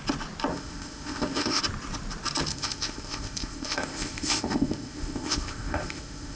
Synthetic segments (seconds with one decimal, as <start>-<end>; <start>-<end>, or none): 0.5-1.6; 2.5-6.4

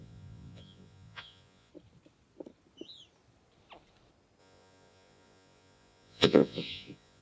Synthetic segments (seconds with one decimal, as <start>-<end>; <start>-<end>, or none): 0.0-1.7; 4.4-7.2

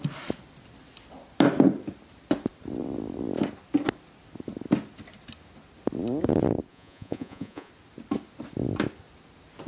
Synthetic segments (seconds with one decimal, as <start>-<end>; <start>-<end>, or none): 6.7-7.7

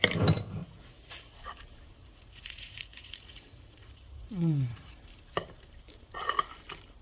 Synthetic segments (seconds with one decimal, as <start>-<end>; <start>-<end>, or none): 0.6-1.4; 2.0-5.0

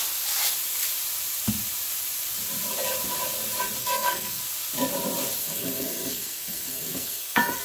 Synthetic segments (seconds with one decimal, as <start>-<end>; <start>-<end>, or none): 3.8-4.4; 5.4-7.6